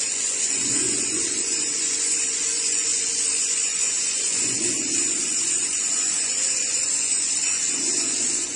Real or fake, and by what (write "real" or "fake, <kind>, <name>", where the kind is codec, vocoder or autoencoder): fake, vocoder, Vocos